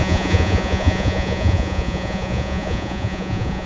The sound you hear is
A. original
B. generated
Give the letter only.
B